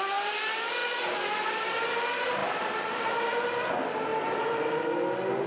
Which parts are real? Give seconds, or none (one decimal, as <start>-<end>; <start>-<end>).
0.0-0.8; 1.3-2.4; 3.1-4.1; 4.7-5.5